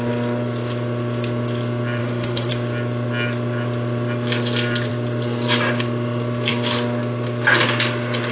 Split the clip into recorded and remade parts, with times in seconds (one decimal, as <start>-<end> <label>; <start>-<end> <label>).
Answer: 0.0-2.0 recorded; 2.0-2.5 remade; 2.5-8.3 recorded